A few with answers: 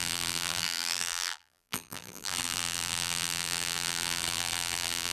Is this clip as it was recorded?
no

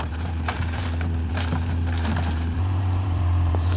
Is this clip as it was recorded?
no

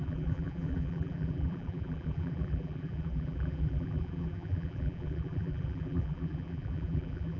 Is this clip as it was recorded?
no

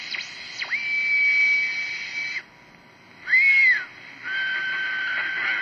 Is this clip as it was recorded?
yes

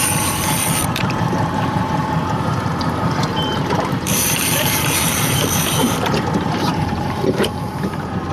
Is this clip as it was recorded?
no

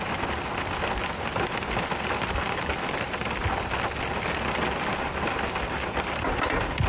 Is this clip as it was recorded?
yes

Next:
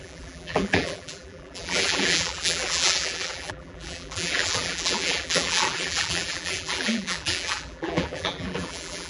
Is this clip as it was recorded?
no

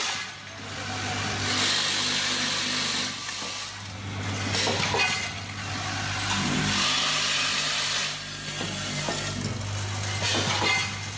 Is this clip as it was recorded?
yes